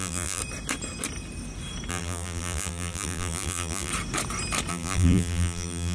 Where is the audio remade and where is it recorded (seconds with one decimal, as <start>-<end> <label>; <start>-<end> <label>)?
0.0-0.4 remade; 0.4-1.9 recorded; 1.9-3.9 remade; 3.9-4.7 recorded; 4.7-5.9 remade